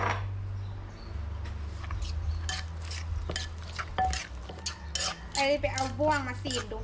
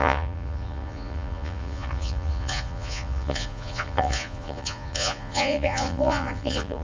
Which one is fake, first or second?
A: second